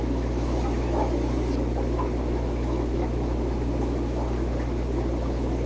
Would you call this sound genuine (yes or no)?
no